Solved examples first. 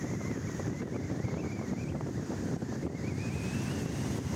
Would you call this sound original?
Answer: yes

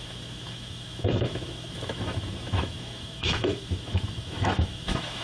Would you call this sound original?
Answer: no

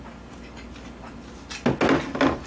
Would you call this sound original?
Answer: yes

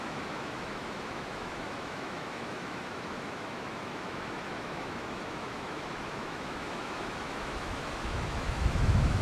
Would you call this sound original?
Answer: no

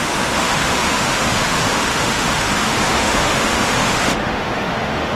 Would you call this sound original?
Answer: no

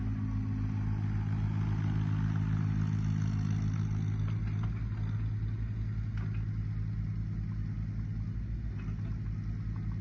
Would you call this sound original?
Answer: yes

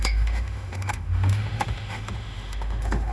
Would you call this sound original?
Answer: no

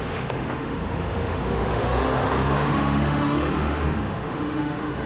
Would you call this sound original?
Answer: no